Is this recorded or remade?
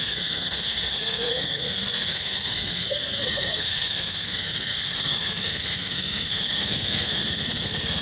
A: remade